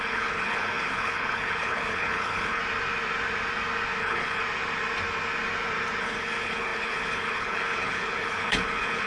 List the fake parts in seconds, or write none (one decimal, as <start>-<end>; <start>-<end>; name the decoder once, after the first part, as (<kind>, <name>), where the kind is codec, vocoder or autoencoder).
0.0-2.6 (codec, HILCodec); 4.0-4.4; 6.0-9.1